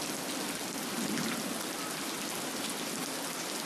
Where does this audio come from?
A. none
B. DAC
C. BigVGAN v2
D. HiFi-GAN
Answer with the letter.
A